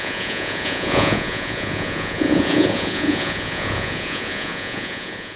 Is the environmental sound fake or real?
fake